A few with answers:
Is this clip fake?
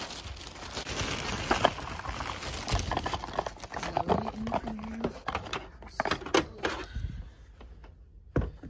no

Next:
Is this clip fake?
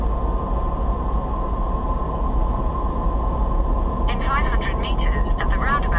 no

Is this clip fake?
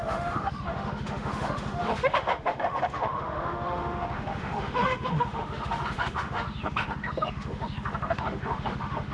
yes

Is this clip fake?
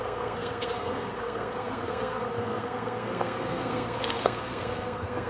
yes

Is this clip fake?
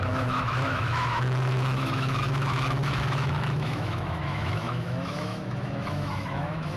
yes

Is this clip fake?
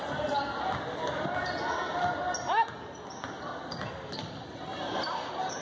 no